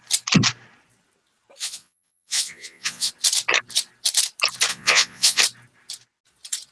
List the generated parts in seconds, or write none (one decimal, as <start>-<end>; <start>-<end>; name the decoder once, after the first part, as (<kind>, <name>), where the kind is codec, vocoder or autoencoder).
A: 1.6-3.1 (vocoder, Vocos); 4.7-5.4